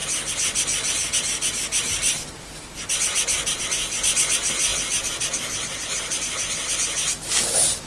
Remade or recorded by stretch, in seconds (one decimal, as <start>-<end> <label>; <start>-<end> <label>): 0.0-7.9 recorded